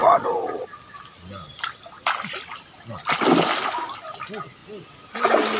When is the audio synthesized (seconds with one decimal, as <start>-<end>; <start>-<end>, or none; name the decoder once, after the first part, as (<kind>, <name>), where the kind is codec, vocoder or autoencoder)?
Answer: none